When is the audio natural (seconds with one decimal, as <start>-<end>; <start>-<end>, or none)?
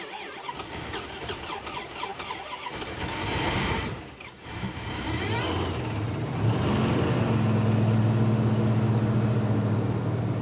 0.0-10.4